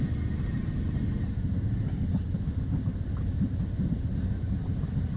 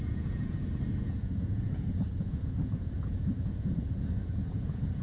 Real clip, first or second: first